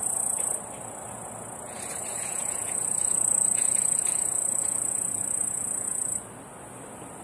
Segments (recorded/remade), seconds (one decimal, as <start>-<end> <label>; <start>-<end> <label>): 0.0-2.1 recorded; 2.1-5.2 remade; 5.2-7.2 recorded